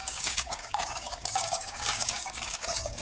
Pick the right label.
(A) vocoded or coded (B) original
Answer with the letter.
A